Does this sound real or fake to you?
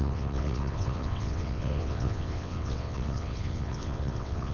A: fake